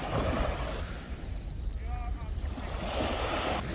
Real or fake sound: real